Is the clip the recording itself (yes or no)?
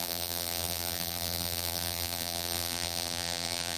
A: no